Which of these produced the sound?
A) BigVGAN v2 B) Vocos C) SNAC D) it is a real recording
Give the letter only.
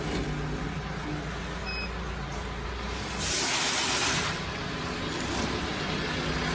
D